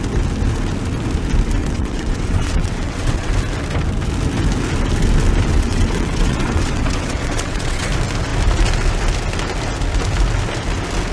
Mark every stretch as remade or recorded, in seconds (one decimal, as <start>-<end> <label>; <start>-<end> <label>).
0.0-1.6 recorded; 1.6-3.3 remade; 3.3-5.5 recorded; 5.5-7.9 remade; 7.9-11.1 recorded